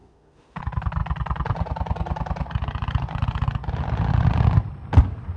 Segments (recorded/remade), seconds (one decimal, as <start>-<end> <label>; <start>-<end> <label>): 0.0-0.6 remade; 0.6-5.4 recorded